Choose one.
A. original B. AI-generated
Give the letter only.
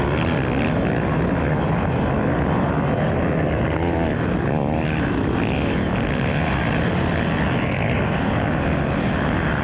A